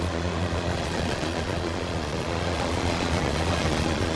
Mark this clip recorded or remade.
remade